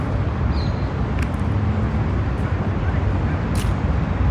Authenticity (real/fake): real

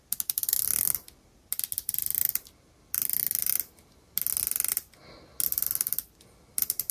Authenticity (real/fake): real